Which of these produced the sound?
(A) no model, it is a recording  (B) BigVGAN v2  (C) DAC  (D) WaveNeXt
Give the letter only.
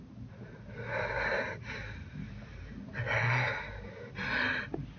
A